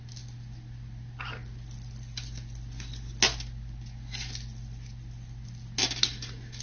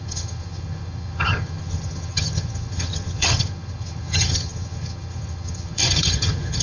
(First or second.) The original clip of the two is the first